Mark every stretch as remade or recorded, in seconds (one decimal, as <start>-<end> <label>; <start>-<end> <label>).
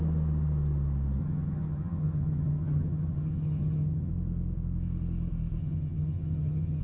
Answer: 0.0-1.2 recorded; 1.2-4.1 remade; 4.1-5.6 recorded; 5.6-6.8 remade